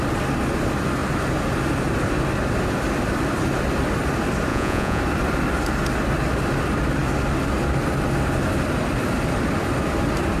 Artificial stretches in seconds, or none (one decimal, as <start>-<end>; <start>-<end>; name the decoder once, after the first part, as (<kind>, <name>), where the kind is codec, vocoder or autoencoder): 4.5-5.0 (vocoder, Vocos)